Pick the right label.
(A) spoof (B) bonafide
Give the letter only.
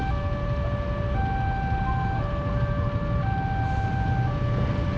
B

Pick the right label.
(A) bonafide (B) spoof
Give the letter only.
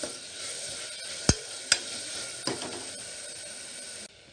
A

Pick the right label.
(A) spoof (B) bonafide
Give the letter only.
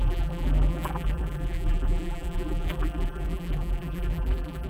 A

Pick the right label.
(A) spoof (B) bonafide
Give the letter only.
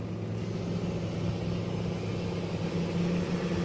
B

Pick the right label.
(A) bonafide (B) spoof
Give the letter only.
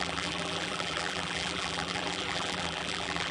B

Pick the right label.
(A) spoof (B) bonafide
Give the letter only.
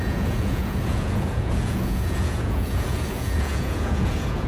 A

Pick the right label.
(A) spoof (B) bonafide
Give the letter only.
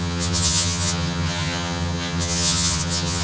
A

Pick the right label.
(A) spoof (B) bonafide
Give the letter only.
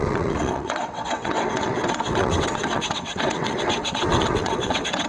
A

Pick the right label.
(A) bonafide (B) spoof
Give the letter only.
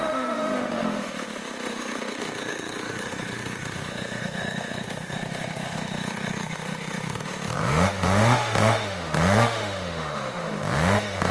B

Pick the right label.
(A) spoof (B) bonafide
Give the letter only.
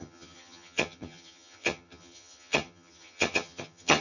A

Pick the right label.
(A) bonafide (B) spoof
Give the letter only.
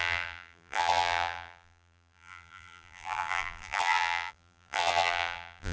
B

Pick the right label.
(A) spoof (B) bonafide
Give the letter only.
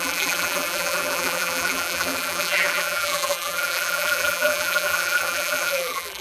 A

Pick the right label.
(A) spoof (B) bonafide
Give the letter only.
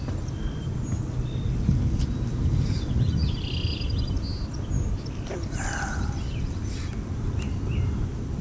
B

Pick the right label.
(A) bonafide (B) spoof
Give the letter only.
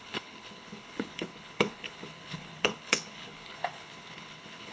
B